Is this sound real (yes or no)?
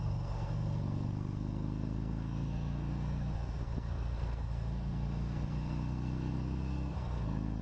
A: no